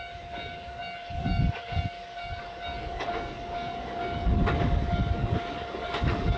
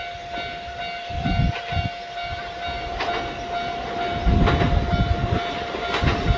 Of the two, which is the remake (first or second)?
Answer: first